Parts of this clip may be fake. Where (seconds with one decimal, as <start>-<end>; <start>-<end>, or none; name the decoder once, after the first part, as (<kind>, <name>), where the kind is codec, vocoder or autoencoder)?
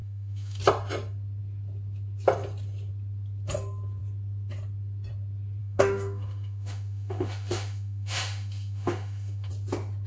0.0-0.6 (autoencoder, DAC-VAE); 5.6-9.5